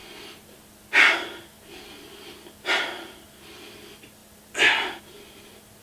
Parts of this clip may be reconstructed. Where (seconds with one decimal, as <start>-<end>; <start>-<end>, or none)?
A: none